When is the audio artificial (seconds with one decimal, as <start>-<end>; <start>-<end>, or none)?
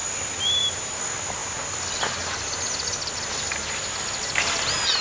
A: none